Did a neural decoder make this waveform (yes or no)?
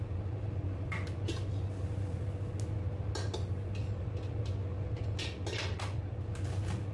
no